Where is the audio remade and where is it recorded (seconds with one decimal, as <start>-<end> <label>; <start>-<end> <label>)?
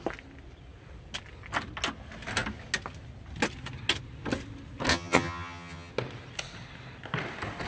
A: 0.0-4.9 recorded; 4.9-5.9 remade; 5.9-7.7 recorded